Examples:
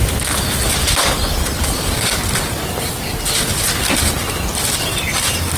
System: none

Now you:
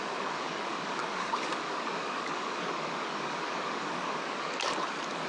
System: codec, DAC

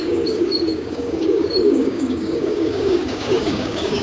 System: codec, DAC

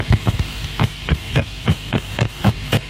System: codec, DAC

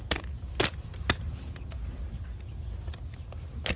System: none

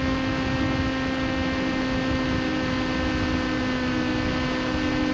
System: none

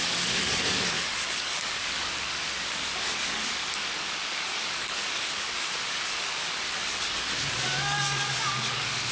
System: codec, DAC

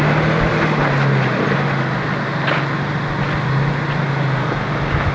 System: none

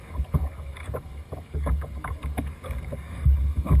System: codec, DAC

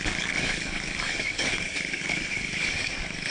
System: codec, DAC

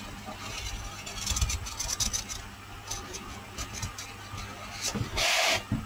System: none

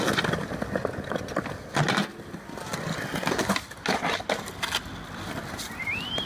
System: none